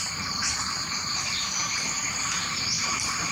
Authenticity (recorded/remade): remade